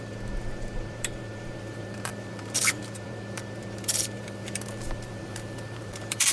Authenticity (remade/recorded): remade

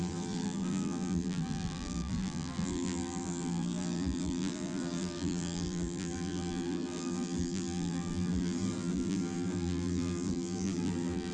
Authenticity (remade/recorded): remade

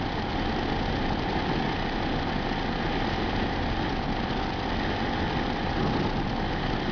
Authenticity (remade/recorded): recorded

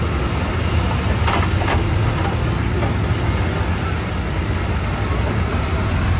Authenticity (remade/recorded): recorded